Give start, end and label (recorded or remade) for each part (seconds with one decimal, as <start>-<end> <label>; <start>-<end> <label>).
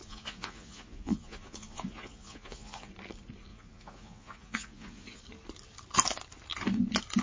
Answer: 0.0-2.9 remade; 2.9-3.5 recorded; 3.5-5.2 remade; 5.2-7.2 recorded